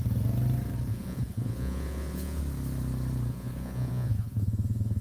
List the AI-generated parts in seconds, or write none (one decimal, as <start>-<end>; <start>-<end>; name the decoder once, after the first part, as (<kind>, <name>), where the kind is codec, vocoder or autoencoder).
0.9-2.4 (vocoder, Vocos); 3.3-5.0